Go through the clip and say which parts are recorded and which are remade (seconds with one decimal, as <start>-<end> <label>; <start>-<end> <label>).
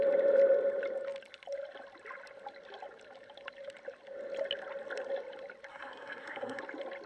0.0-5.7 recorded; 5.7-6.6 remade; 6.6-7.1 recorded